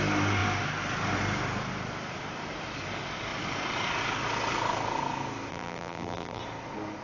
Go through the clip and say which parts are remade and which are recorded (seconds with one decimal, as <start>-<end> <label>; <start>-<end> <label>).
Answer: 0.0-5.5 recorded; 5.5-6.4 remade; 6.4-7.0 recorded